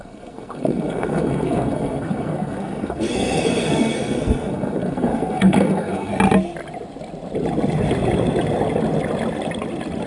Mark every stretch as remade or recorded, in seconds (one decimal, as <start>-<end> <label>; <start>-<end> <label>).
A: 0.0-6.1 remade; 6.1-10.1 recorded